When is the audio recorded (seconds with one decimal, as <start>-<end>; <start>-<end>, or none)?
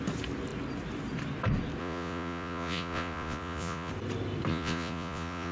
0.0-1.8; 3.9-4.5